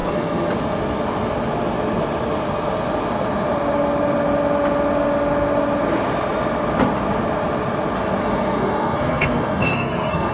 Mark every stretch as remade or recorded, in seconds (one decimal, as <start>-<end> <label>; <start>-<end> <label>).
0.0-0.5 remade; 0.5-8.2 recorded; 8.2-10.3 remade